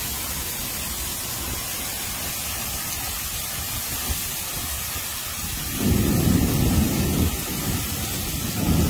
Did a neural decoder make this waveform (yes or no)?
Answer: no